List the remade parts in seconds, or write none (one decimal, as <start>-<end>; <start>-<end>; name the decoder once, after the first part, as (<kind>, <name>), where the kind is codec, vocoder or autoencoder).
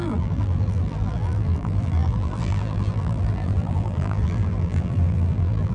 0.0-5.7 (vocoder, BigVGAN v2)